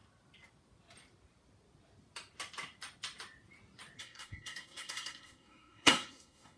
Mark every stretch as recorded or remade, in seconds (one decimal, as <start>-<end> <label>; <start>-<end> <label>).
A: 0.0-4.0 recorded; 4.0-6.6 remade